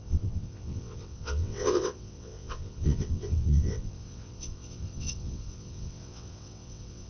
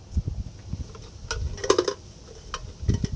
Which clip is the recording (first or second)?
second